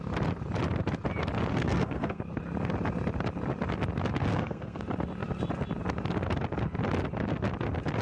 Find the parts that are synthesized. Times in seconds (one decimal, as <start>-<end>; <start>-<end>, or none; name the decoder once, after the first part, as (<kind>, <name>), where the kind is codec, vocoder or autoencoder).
1.5-2.2 (codec, SNAC); 4.3-4.8